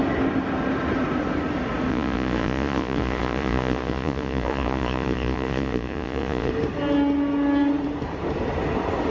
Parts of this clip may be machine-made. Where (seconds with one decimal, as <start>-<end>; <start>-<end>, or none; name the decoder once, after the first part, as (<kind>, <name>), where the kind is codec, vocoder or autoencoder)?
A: 1.9-6.5 (vocoder, Vocos)